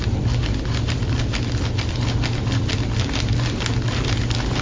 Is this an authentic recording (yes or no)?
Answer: yes